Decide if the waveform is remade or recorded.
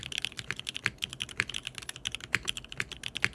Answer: recorded